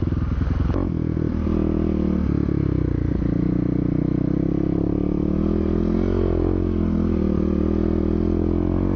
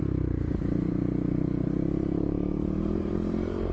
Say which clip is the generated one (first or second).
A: second